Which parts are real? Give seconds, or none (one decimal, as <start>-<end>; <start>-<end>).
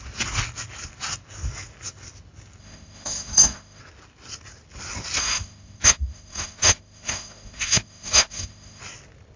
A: 0.0-2.6; 3.8-5.2; 8.8-9.4